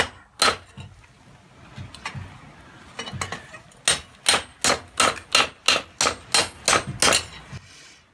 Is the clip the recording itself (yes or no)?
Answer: yes